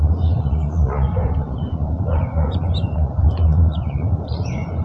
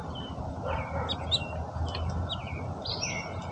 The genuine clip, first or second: second